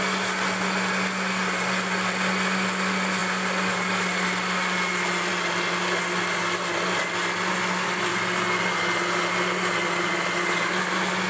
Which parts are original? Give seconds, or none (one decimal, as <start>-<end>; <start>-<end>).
0.0-11.3

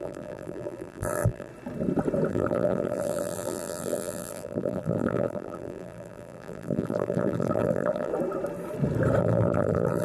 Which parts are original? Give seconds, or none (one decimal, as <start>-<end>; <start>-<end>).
1.5-2.3; 8.1-9.2

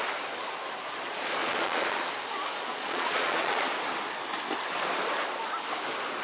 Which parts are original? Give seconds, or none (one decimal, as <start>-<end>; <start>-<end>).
0.0-1.4; 2.1-2.7; 3.7-6.2